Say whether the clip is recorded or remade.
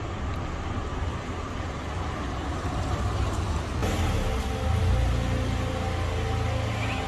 recorded